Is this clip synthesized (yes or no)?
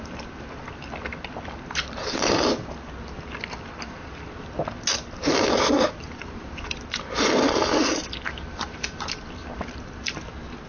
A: yes